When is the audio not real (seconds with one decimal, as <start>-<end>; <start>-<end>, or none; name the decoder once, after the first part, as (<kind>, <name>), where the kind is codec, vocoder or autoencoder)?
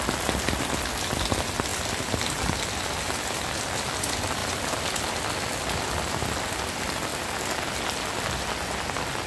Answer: none